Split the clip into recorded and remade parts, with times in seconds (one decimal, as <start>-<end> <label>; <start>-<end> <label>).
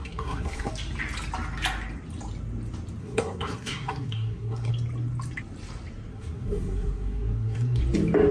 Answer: 0.0-0.7 remade; 0.7-3.0 recorded; 3.0-4.7 remade; 4.7-6.1 recorded; 6.1-7.8 remade; 7.8-8.3 recorded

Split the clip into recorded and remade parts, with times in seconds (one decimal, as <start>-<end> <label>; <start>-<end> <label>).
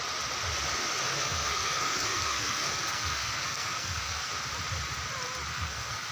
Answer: 0.0-1.1 recorded; 1.1-4.3 remade; 4.3-5.5 recorded; 5.5-6.1 remade